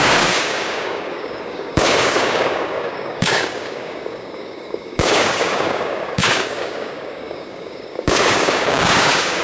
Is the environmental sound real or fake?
fake